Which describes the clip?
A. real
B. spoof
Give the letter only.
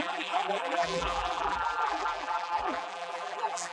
B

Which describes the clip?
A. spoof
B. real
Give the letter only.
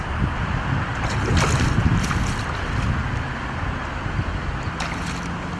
B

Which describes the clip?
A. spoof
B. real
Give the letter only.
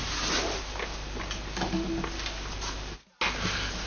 B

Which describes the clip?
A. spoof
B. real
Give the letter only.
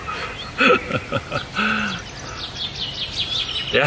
B